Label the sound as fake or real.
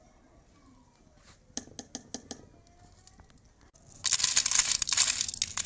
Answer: real